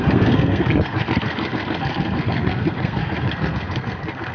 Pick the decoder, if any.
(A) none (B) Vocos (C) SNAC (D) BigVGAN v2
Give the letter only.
C